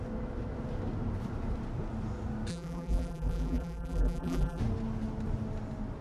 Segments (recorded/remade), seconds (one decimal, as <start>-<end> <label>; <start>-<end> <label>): 0.0-2.5 recorded; 2.5-4.6 remade; 4.6-6.0 recorded